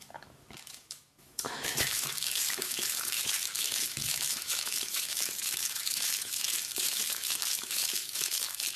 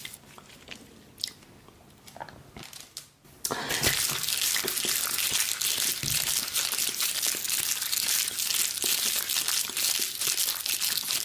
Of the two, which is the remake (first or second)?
first